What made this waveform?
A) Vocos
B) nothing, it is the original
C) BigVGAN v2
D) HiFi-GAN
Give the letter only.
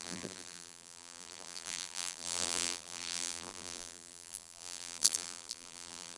C